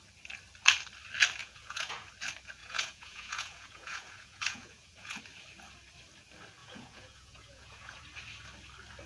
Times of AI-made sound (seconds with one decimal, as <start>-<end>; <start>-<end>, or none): 1.4-2.1; 2.6-5.2; 6.6-8.0